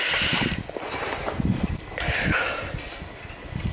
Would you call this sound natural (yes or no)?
yes